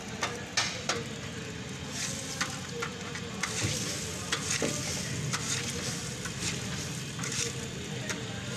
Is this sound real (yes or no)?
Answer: yes